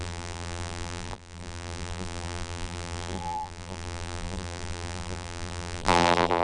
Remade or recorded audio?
remade